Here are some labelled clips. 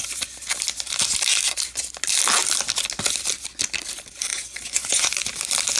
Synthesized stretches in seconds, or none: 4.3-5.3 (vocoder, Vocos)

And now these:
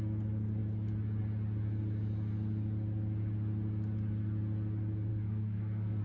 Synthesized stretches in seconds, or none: 5.1-6.0 (codec, SNAC)

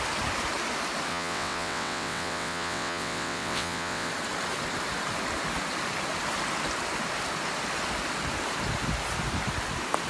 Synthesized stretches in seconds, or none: 1.1-4.1 (vocoder, WaveNeXt)

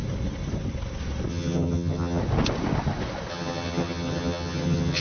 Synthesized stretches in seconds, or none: 1.3-2.2 (vocoder, HiFi-GAN); 3.3-5.0

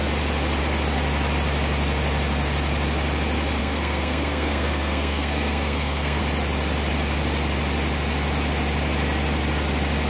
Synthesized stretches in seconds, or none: 3.6-6.2 (codec, SNAC)